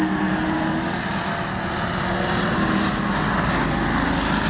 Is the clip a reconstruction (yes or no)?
no